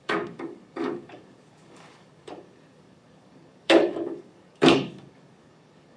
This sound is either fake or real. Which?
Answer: fake